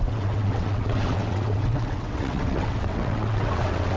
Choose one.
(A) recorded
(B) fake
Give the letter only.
B